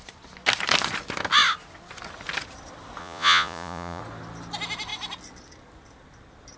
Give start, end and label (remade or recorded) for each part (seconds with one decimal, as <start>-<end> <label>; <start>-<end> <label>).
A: 0.0-3.0 recorded; 3.0-4.0 remade; 4.0-6.6 recorded